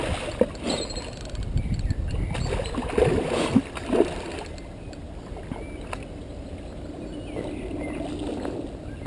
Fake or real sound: real